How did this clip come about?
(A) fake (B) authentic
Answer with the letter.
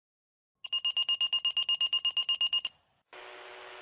B